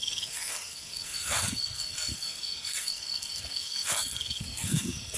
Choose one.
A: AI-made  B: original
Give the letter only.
A